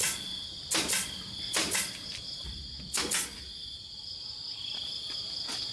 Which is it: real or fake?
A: real